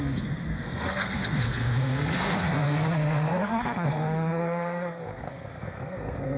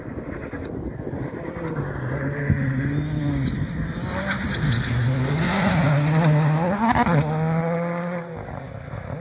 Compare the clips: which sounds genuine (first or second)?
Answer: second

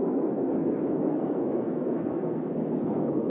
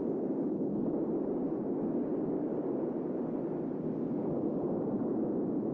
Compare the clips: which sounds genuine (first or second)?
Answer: second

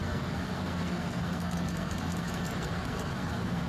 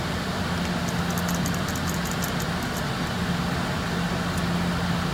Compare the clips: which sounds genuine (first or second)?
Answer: second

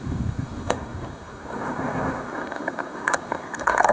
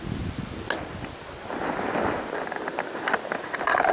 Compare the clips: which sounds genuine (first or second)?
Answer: second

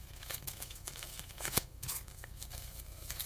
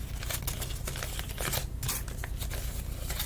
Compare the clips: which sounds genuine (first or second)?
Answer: second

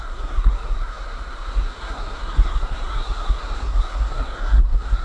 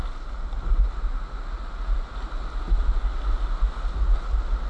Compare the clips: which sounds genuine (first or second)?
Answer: second